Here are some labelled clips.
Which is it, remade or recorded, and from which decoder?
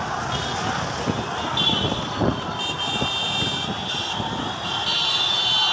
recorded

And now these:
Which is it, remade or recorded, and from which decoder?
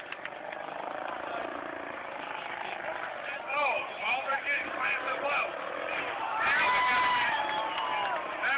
recorded